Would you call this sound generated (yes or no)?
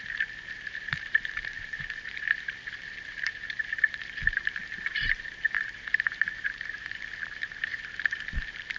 yes